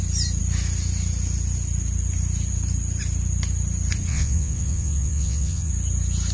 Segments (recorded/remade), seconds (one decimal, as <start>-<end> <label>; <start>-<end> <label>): 0.0-4.1 recorded; 4.1-5.7 remade; 5.7-6.3 recorded